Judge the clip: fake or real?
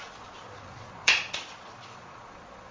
fake